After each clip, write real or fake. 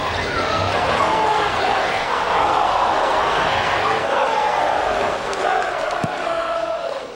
fake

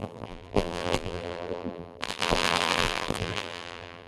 fake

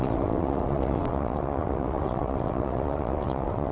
fake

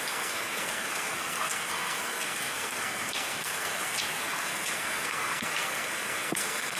fake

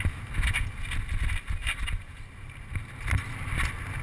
real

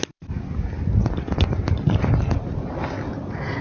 real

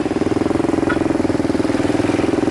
fake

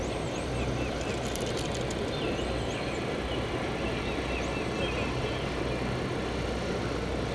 real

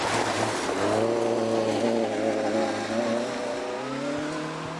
real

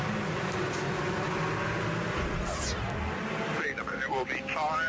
real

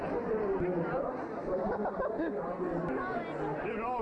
real